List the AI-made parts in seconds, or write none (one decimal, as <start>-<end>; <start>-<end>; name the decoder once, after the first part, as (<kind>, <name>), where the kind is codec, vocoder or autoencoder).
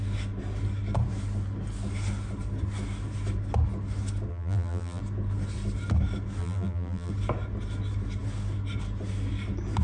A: 4.3-5.0 (vocoder, BigVGAN v2); 6.4-7.1